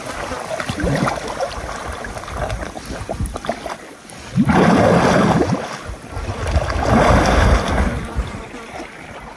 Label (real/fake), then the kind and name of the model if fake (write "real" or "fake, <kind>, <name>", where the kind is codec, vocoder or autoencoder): real